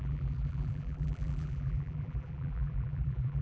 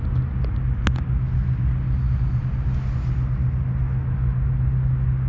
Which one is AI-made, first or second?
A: first